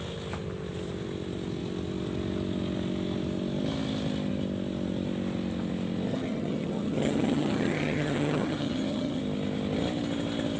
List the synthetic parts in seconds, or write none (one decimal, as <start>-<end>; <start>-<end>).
6.1-9.2